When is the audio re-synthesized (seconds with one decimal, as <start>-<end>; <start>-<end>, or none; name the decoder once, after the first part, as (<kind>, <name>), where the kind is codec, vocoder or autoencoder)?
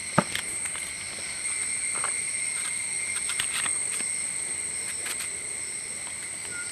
none